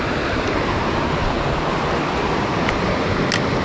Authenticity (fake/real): real